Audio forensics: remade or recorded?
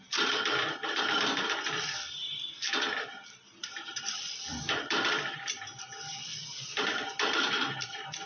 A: remade